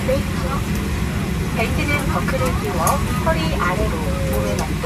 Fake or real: real